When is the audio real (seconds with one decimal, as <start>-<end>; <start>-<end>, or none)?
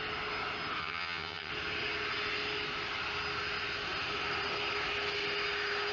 0.0-0.8; 1.5-5.9